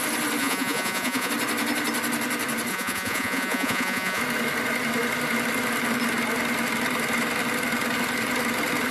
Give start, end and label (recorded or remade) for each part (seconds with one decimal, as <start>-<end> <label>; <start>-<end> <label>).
0.0-0.4 recorded; 0.4-1.3 remade; 1.3-2.7 recorded; 2.7-4.2 remade; 4.2-8.9 recorded